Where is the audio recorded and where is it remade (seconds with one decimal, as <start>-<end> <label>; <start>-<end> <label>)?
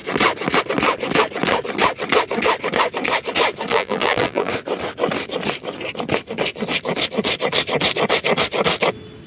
0.0-3.7 recorded; 3.7-4.5 remade; 4.5-9.3 recorded